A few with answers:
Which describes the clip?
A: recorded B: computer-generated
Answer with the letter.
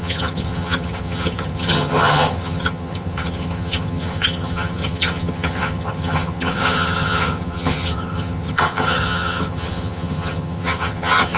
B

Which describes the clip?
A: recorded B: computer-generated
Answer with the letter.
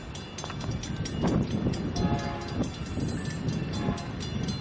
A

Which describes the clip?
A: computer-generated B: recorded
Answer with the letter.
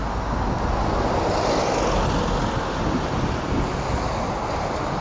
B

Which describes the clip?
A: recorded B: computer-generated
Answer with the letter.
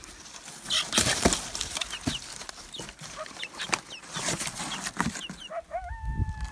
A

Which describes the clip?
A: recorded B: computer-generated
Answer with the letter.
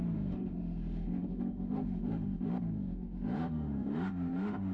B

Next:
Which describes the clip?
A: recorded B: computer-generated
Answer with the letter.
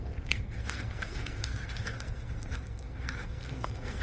B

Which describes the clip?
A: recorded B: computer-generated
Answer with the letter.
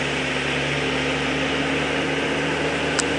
A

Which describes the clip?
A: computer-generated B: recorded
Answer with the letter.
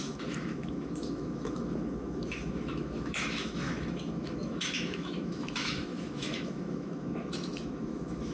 A